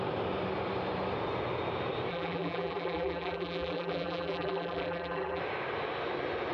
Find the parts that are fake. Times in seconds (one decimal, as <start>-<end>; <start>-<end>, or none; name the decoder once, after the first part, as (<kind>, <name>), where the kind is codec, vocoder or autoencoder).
2.1-5.4 (vocoder, BigVGAN v2)